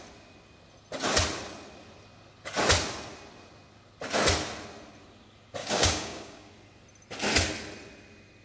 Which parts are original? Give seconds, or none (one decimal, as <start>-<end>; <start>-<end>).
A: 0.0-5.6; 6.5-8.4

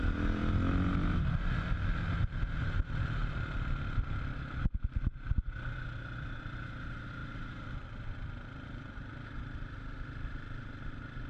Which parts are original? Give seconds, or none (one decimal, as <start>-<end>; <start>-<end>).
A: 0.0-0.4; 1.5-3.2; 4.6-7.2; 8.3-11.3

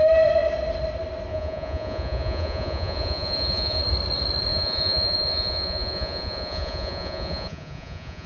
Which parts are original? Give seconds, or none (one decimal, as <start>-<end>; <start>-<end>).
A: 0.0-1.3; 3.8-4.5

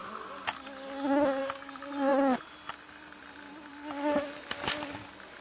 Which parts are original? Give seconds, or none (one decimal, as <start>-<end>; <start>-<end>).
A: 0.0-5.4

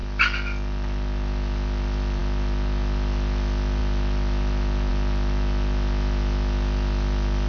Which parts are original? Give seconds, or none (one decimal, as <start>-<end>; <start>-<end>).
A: 0.0-7.5